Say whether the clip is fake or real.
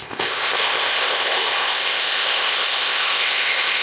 fake